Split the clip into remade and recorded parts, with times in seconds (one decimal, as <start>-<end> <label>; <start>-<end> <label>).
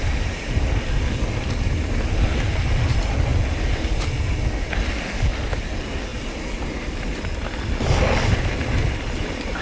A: 0.0-9.6 recorded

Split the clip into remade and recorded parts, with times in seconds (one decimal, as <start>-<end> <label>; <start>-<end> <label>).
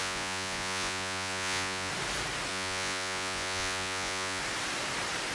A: 0.0-1.9 remade; 1.9-2.5 recorded; 2.5-4.4 remade; 4.4-5.3 recorded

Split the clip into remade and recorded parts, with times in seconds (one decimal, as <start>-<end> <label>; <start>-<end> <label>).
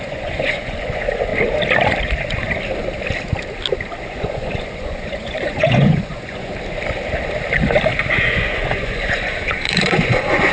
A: 0.0-1.3 remade; 1.3-4.0 recorded; 4.0-6.5 remade; 6.5-8.1 recorded; 8.1-10.5 remade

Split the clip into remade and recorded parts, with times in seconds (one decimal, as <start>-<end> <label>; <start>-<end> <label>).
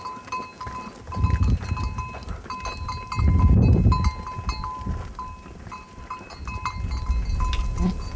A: 0.0-8.2 recorded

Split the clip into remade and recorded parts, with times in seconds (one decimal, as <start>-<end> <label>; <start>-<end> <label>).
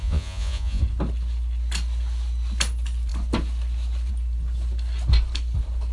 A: 0.0-0.8 remade; 0.8-5.9 recorded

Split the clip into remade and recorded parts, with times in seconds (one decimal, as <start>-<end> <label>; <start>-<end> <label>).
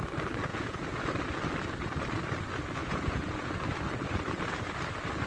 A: 0.0-0.5 recorded; 0.5-1.0 remade; 1.0-2.8 recorded; 2.8-3.5 remade; 3.5-5.3 recorded